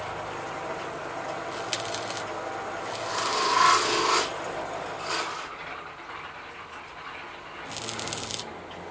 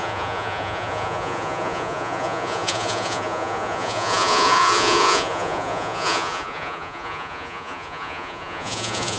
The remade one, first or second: second